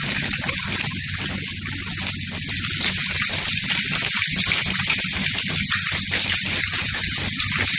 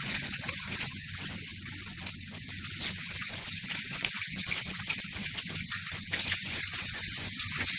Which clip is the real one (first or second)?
first